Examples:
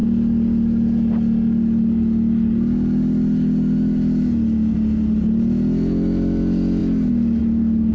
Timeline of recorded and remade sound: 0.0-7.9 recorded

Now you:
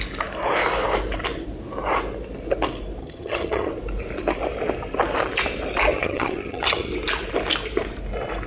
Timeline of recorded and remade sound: 0.0-3.0 recorded; 3.0-3.7 remade; 3.7-5.9 recorded; 5.9-6.9 remade; 6.9-8.5 recorded

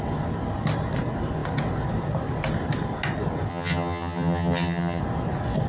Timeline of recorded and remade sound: 0.0-3.5 recorded; 3.5-5.0 remade; 5.0-5.7 recorded

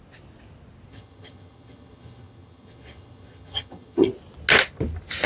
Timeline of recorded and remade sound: 0.0-0.9 recorded; 0.9-4.1 remade; 4.1-5.3 recorded

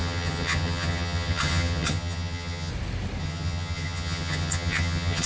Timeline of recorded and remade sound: 0.0-2.7 remade; 2.7-3.2 recorded; 3.2-5.3 remade